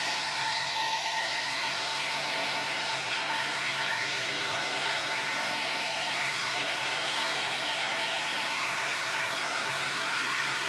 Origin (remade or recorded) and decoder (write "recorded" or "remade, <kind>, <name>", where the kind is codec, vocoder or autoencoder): remade, codec, SNAC